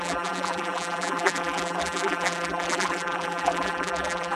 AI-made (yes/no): yes